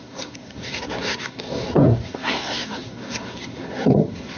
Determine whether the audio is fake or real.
fake